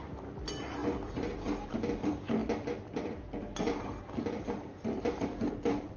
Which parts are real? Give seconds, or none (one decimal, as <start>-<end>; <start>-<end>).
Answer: 0.8-1.7